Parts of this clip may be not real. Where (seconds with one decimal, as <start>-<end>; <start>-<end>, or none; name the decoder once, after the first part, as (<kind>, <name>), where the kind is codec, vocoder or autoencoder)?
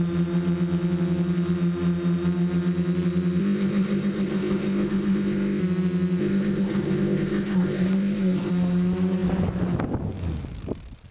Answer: 3.4-5.6 (codec, ZipCodec); 6.2-8.5